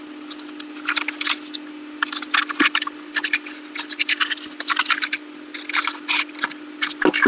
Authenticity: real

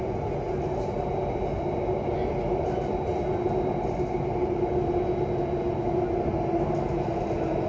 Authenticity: real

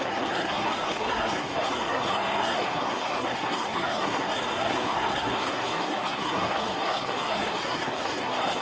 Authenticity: fake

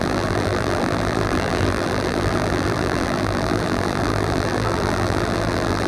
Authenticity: fake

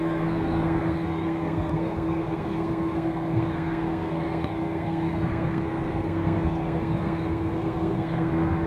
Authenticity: fake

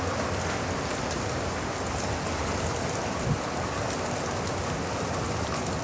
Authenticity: real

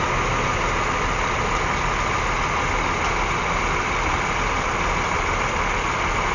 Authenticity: real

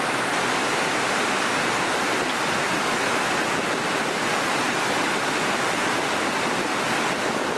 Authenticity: real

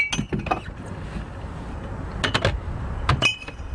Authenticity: real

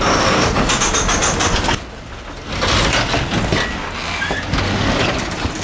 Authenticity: real